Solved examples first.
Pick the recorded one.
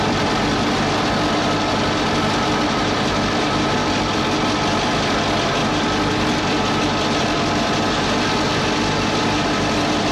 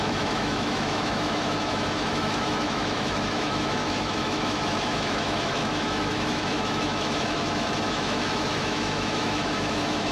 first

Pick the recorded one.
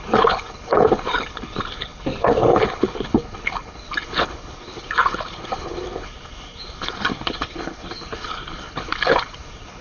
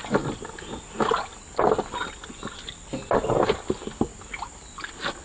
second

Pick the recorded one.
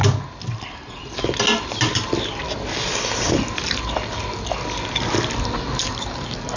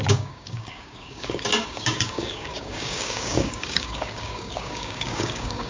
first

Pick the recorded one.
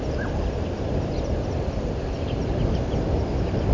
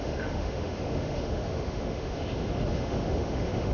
first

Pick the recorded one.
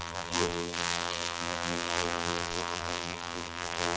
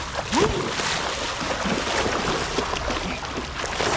second